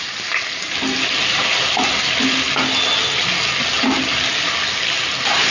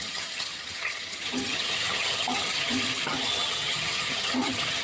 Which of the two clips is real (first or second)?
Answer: first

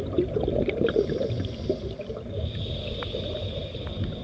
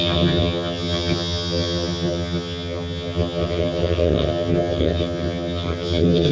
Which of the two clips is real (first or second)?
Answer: first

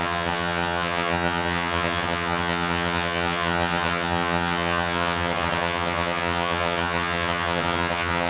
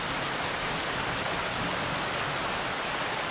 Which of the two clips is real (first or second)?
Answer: second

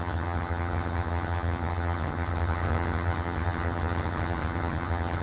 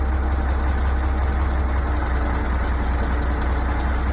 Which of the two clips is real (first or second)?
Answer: second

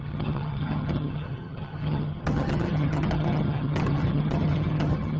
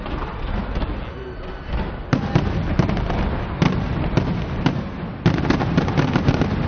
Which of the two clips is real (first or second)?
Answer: second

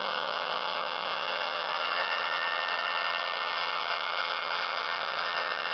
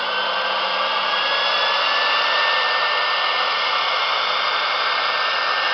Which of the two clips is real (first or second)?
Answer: second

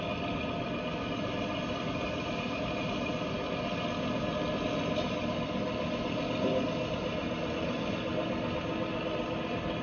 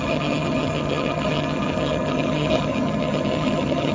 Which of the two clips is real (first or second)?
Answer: first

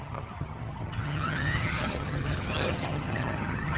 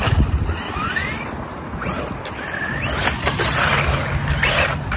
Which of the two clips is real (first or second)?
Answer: second